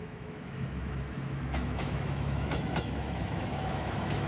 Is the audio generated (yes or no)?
yes